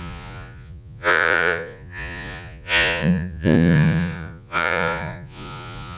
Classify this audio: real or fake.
fake